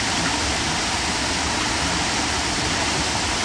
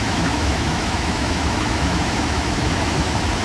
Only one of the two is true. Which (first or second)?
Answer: first